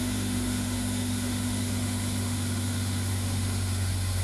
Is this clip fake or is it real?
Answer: fake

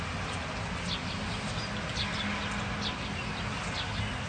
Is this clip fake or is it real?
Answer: real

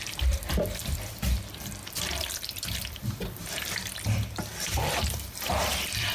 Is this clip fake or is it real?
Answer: fake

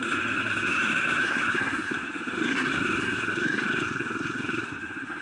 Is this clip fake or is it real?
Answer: fake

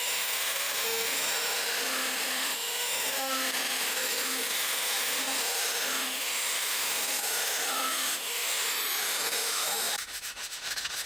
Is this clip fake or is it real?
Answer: fake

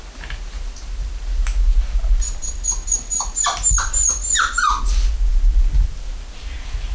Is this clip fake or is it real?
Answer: real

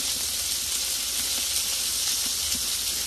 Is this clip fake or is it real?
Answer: real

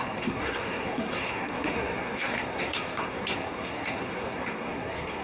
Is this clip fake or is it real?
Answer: fake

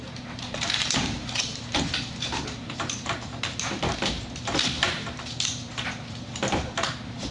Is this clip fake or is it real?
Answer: fake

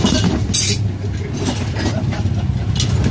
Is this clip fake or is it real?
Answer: real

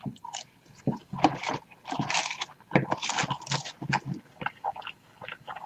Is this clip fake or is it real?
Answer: real